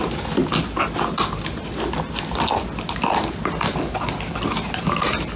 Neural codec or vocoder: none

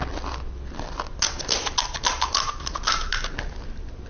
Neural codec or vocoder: none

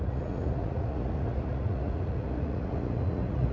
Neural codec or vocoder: vocoder, Vocos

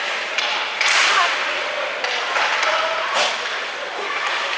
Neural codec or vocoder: none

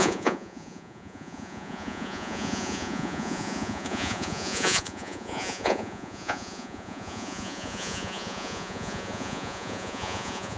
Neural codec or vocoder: vocoder, Vocos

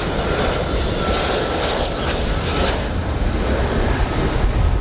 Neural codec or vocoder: none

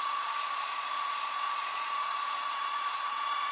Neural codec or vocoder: vocoder, Vocos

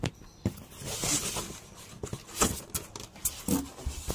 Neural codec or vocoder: none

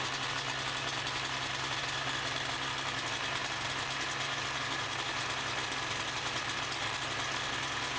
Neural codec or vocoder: none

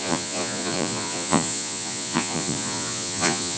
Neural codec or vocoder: vocoder, Vocos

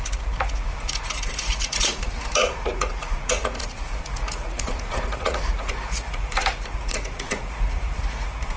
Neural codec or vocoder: vocoder, Vocos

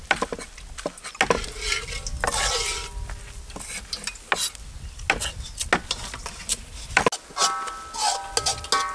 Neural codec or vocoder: none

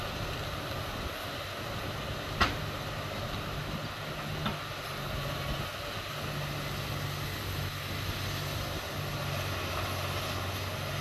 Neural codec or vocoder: none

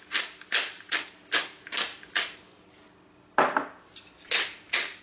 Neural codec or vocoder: none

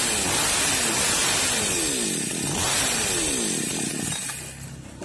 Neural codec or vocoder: none